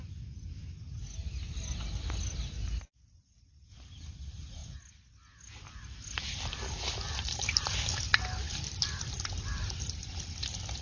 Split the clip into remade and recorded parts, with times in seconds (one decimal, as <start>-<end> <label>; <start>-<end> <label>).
0.0-0.6 remade; 0.6-3.8 recorded; 3.8-4.6 remade; 4.6-5.8 recorded; 5.8-10.8 remade